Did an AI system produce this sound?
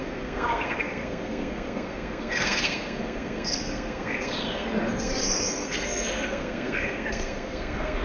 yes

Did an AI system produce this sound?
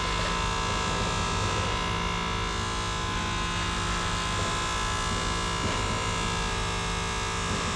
no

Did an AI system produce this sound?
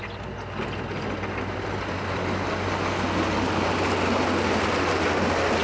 no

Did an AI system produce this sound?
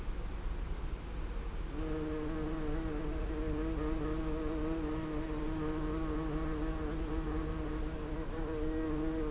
no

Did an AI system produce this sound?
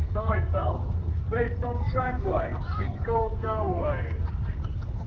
yes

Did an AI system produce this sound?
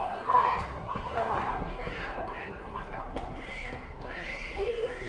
yes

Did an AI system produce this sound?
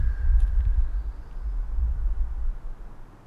no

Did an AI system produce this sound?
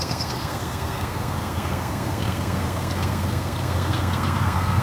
yes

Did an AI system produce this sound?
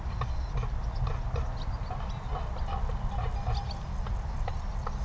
no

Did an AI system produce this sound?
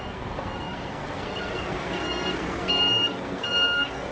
yes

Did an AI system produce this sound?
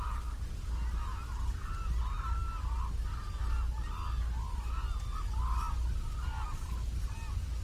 no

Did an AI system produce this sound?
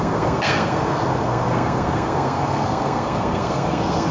yes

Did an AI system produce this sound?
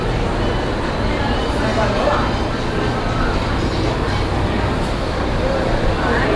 no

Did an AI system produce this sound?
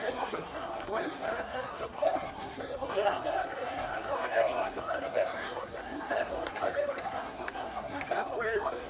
yes